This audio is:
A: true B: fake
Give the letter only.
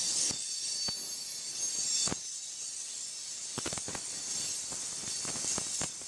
A